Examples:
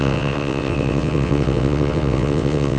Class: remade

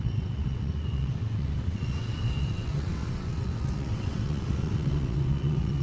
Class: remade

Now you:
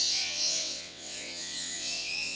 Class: remade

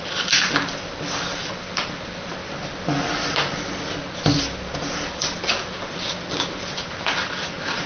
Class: recorded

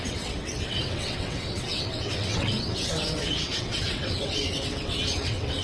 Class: remade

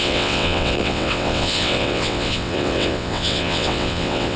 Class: remade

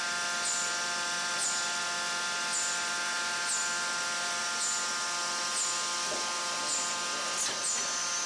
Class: recorded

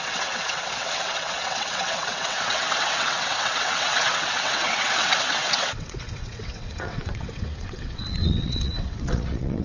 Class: remade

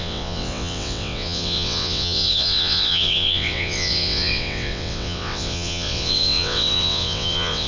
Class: remade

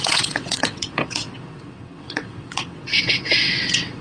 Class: remade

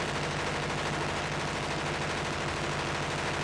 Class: recorded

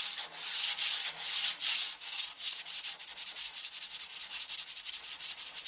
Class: recorded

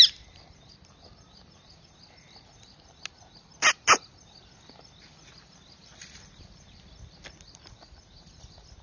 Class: recorded